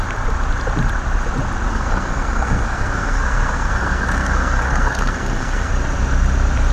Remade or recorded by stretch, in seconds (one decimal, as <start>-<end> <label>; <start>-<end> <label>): 0.0-1.7 recorded; 1.7-5.7 remade; 5.7-6.7 recorded